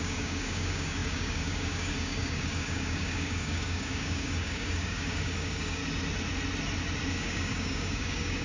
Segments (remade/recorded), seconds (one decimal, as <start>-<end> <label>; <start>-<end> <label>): 0.0-5.8 remade; 5.8-7.1 recorded; 7.1-8.4 remade